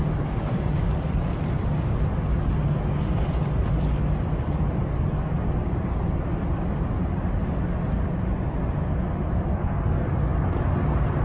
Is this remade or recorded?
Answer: recorded